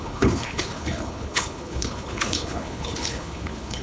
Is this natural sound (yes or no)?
no